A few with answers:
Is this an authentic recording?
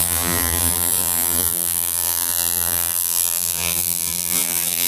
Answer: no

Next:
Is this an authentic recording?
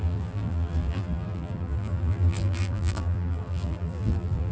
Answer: no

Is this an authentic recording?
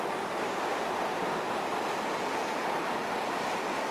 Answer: no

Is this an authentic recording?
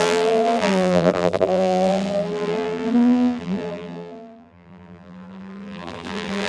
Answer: no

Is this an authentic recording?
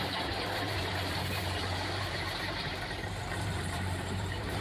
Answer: no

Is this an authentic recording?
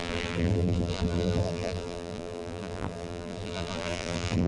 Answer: no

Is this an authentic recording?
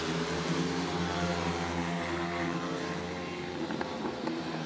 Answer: no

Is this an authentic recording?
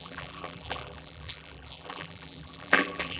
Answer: no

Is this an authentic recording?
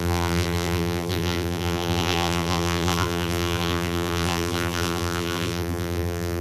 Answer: no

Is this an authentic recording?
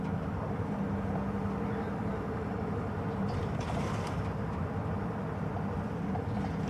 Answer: no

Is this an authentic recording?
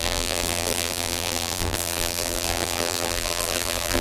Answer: no